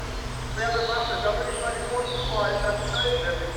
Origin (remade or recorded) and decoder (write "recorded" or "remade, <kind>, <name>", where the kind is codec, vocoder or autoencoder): recorded